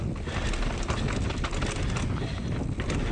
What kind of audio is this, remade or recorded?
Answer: recorded